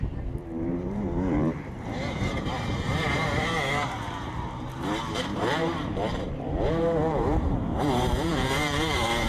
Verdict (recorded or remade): remade